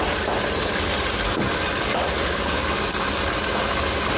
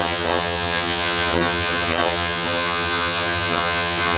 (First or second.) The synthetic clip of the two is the second